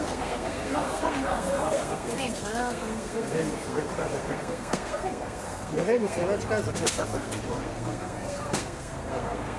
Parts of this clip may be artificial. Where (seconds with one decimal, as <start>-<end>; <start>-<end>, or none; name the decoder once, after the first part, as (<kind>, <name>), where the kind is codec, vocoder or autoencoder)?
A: 0.0-6.2 (codec, SNAC); 6.7-9.6